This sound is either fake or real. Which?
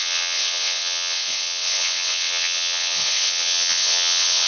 fake